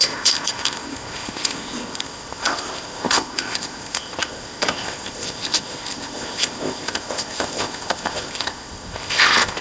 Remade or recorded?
remade